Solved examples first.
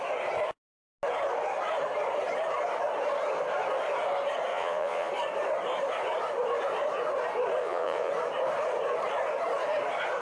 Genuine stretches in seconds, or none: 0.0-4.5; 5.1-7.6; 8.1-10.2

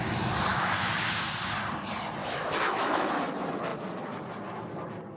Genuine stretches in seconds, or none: 0.0-0.5; 1.2-2.2; 3.1-5.2